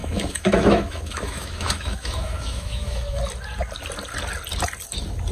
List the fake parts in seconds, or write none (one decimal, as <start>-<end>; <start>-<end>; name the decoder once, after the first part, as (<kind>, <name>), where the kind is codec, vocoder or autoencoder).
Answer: 0.0-3.2 (autoencoder, DAC-VAE)